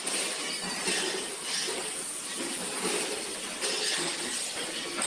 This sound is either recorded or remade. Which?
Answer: recorded